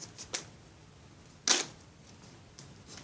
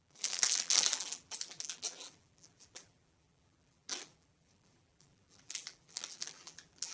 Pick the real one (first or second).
first